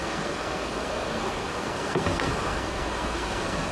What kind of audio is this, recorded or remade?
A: remade